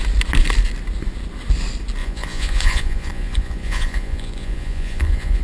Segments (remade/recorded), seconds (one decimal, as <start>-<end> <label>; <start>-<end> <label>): 0.0-2.0 recorded; 2.0-5.4 remade